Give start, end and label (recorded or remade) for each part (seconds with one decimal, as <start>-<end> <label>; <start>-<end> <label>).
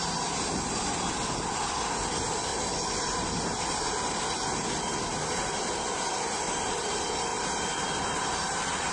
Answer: 0.0-8.9 recorded